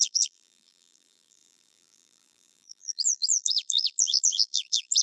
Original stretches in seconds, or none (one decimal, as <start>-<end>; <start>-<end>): none

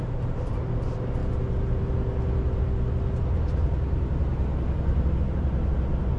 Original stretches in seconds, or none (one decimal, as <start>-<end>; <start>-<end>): 0.0-6.2